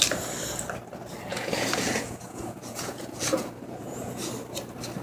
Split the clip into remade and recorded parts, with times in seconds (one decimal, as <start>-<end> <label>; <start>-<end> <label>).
0.0-1.3 recorded; 1.3-4.3 remade; 4.3-5.0 recorded